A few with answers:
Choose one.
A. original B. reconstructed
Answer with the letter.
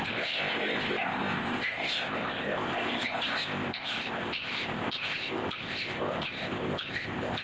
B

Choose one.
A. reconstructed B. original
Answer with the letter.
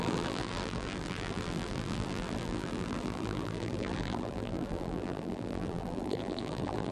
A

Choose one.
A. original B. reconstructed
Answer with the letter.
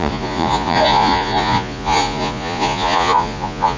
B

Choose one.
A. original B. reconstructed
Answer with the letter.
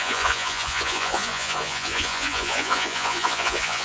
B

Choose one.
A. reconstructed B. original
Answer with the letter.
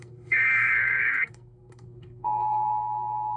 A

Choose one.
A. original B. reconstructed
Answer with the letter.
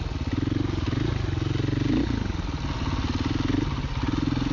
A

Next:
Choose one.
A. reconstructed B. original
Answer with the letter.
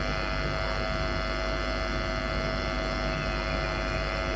B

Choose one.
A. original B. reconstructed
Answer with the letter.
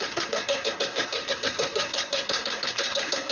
B